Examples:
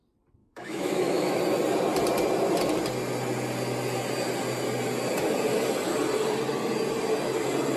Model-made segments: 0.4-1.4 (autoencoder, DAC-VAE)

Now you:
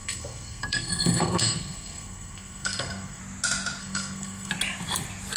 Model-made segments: 0.0-3.2 (codec, SNAC); 3.8-4.5

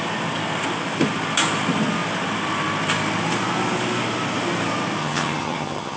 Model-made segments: 5.0-6.0 (vocoder, HiFi-GAN)

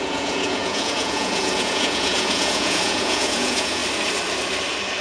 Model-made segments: 0.0-3.8 (vocoder, Vocos)

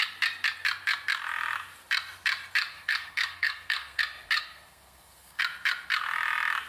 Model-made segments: 2.7-4.0 (codec, SNAC); 4.4-5.4